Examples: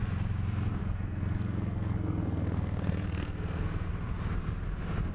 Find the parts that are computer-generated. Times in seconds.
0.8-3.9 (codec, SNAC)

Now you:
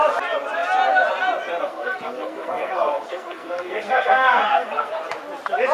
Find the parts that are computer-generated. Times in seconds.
1.6-5.0 (codec, SNAC)

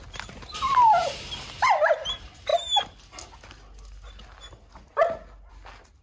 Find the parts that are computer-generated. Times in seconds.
none

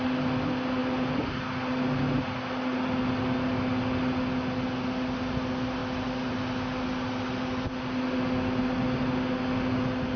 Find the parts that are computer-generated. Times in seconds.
none

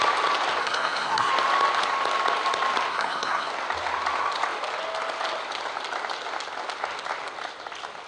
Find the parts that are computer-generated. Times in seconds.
0.6-1.3 (codec, SNAC); 2.9-3.5

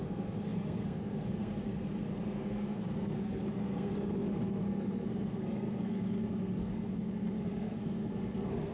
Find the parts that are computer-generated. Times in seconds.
0.0-8.7 (codec, SNAC)